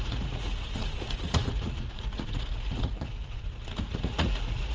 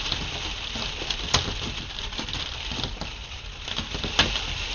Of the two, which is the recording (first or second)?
second